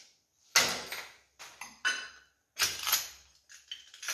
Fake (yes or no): no